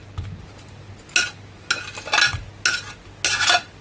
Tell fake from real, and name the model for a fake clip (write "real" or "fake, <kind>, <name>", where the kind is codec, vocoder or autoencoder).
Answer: real